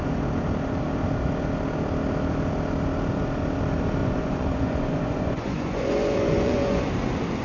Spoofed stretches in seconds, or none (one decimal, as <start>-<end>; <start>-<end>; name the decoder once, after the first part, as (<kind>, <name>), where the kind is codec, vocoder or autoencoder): 4.0-6.8 (vocoder, Vocos)